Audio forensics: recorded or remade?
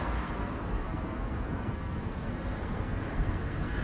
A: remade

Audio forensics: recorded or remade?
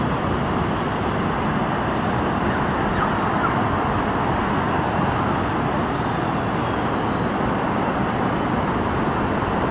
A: recorded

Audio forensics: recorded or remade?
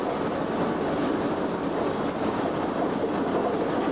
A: recorded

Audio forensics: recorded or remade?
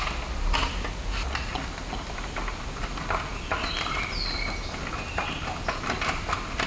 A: recorded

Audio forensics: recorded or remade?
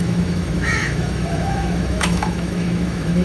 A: remade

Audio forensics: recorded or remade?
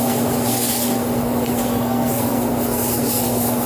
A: remade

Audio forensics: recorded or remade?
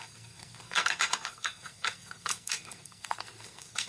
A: remade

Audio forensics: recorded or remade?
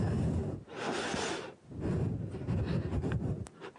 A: recorded